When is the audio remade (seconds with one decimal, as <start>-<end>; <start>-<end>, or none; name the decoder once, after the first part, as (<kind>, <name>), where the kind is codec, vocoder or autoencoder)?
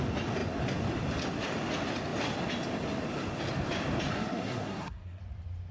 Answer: 4.1-5.2 (codec, SNAC)